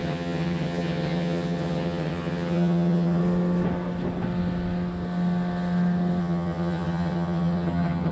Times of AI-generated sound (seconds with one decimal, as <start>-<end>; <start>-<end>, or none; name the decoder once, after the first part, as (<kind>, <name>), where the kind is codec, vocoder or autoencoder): 0.0-3.2 (vocoder, HiFi-GAN); 6.2-8.1